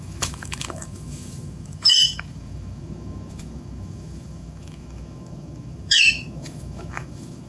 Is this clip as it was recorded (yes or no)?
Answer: no